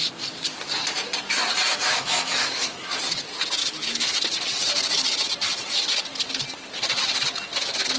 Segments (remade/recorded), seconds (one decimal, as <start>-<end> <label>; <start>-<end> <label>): 0.0-1.7 recorded; 1.7-3.0 remade; 3.0-3.6 recorded; 3.6-4.2 remade; 4.2-8.0 recorded